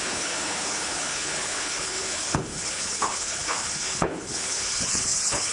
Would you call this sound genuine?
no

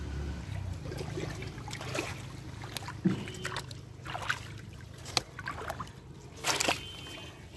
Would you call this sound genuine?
yes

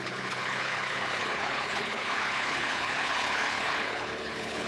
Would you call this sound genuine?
no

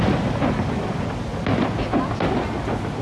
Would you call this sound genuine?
yes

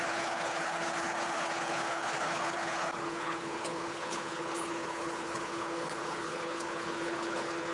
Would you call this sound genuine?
no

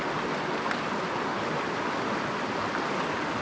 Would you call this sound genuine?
yes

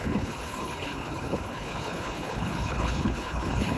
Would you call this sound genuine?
no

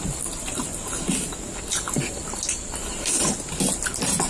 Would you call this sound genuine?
yes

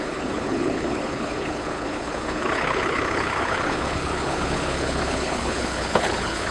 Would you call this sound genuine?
no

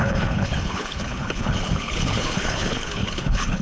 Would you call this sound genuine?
no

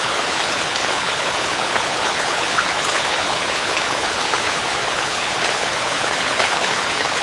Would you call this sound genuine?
no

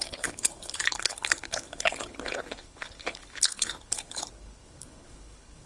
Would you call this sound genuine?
no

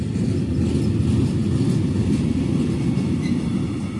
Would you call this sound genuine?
yes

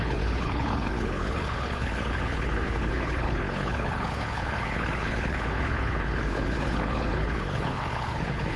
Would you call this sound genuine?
no